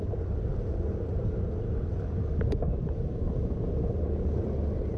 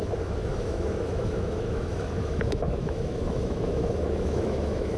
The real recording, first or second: first